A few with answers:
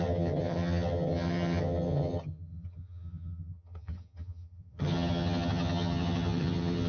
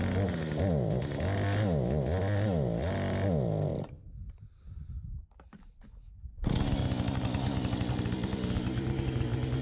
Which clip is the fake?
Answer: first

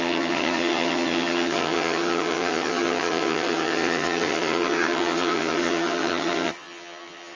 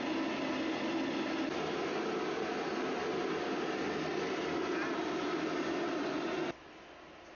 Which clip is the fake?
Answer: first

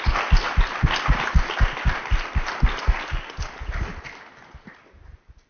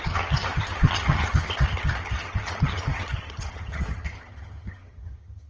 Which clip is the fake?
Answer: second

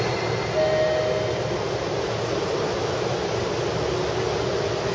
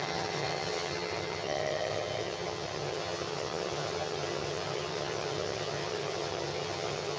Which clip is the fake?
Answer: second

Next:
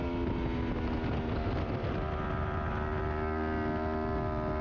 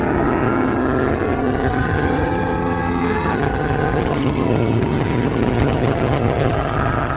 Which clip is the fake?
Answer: second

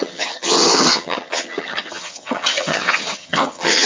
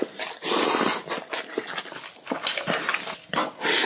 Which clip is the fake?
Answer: first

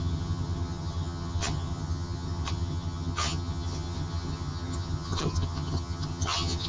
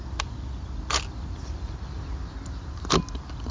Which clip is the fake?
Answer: first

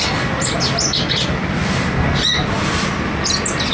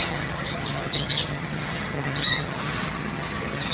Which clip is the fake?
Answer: second